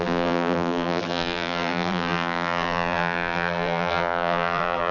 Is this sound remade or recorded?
remade